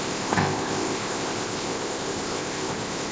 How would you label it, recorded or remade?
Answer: remade